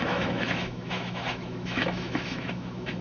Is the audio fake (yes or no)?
yes